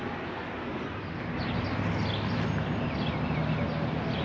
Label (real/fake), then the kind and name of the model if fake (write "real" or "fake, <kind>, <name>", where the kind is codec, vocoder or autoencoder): real